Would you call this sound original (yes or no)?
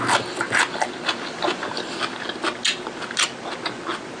yes